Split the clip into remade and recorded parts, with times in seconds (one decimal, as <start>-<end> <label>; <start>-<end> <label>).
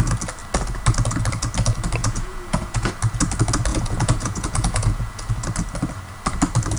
0.0-2.0 recorded; 2.0-2.9 remade; 2.9-3.7 recorded; 3.7-5.3 remade; 5.3-6.8 recorded